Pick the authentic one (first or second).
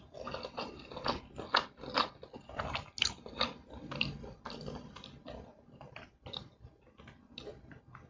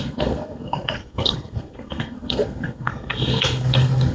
first